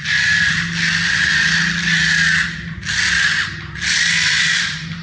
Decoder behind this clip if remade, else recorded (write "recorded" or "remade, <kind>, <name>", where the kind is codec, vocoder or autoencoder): recorded